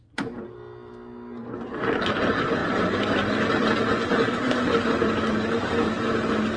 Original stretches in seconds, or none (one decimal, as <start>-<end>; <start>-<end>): 0.0-6.6